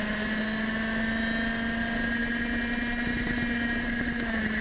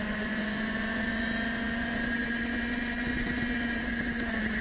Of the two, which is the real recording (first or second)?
first